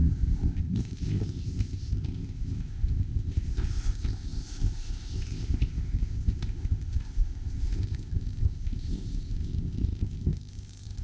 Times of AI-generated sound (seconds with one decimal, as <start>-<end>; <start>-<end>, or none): 0.0-11.0